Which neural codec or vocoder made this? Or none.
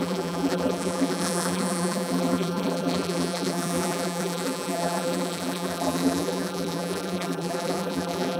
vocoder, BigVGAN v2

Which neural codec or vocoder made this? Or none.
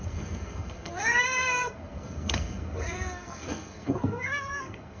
codec, SNAC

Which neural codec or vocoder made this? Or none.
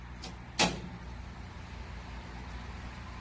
none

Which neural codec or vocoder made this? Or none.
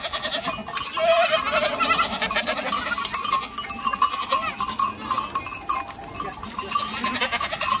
none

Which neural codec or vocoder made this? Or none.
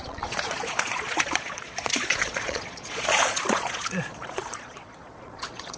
vocoder, Vocos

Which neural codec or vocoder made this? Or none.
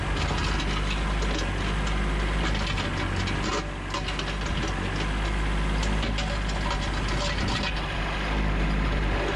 none